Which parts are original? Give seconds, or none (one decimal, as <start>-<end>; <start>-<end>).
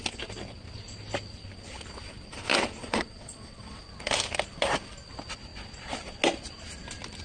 0.0-2.8; 3.8-7.2